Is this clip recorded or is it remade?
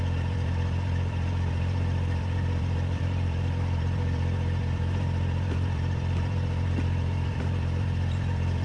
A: remade